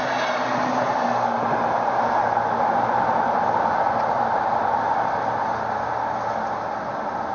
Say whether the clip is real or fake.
real